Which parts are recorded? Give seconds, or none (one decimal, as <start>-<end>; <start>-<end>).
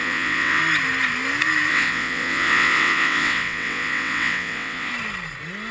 0.6-1.7; 4.9-5.7